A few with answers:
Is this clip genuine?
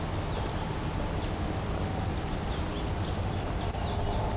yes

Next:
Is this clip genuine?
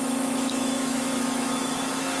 no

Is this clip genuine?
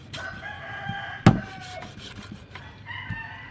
yes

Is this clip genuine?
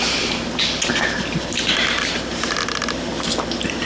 yes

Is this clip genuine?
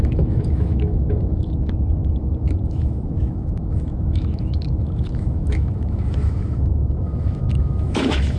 no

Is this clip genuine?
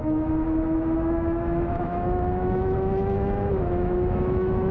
no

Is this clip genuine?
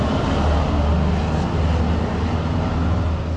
yes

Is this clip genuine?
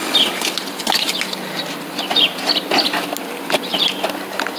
yes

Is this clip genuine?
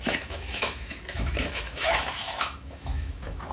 no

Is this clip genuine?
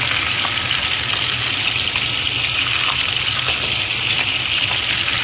yes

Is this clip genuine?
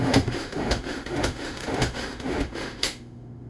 no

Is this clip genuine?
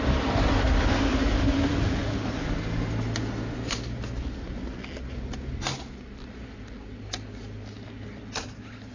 yes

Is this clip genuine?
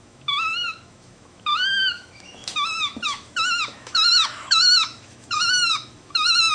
no